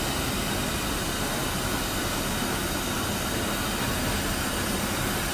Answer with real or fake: real